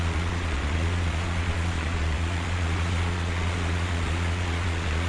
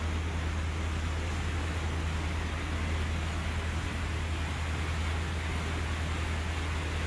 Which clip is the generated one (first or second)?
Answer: first